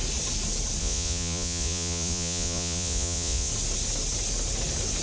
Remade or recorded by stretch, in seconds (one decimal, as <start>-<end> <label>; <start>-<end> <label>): 0.0-0.8 recorded; 0.8-3.5 remade; 3.5-5.0 recorded